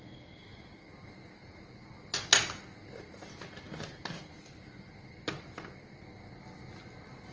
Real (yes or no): yes